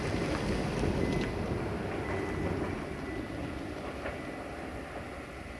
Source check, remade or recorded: recorded